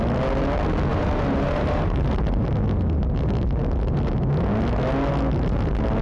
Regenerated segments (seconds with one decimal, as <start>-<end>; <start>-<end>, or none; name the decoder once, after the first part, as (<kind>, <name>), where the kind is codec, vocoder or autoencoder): 0.9-2.5 (vocoder, BigVGAN v2)